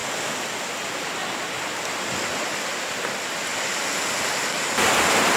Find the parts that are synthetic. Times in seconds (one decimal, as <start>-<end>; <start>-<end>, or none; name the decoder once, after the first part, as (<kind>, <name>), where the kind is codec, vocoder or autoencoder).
none